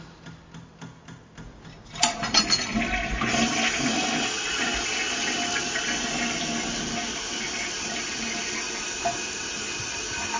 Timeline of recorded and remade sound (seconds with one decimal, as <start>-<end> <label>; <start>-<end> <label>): 0.0-10.4 recorded